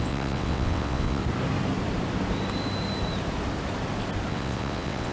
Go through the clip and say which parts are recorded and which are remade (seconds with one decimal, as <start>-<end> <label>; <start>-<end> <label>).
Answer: 0.0-1.2 remade; 1.2-4.3 recorded; 4.3-5.1 remade